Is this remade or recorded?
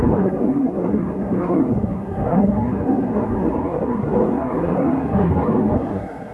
remade